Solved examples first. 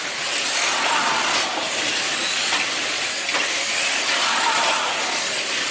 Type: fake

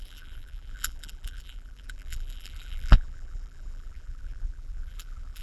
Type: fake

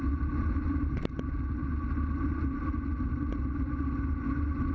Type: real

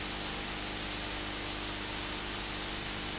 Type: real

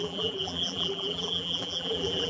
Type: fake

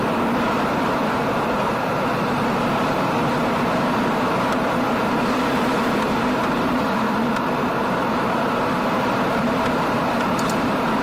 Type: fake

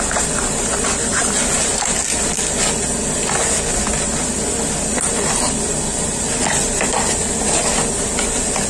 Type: real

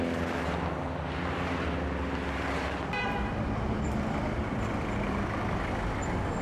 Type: real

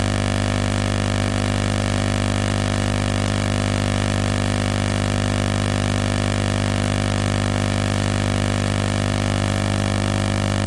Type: fake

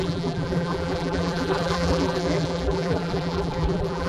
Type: fake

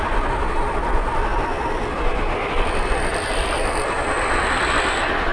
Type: real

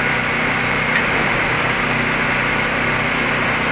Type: fake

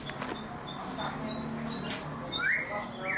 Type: real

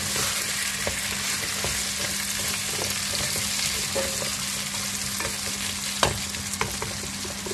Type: real